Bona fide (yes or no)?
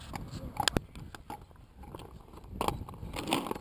yes